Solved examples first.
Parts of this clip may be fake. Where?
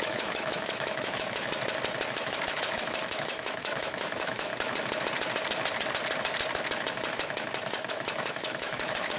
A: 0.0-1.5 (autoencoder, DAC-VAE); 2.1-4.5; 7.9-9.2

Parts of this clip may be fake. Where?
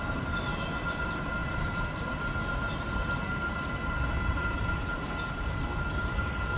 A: none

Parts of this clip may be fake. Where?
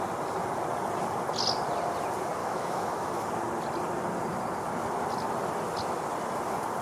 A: 2.4-3.3 (autoencoder, DAC-VAE)